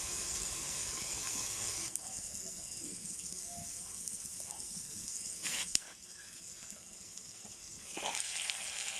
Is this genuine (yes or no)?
no